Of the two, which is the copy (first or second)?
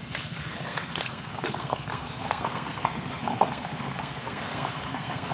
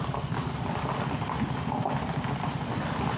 first